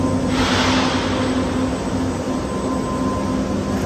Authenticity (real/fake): real